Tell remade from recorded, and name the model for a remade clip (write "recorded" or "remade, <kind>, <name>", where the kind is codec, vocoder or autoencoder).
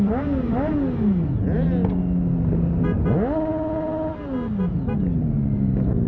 recorded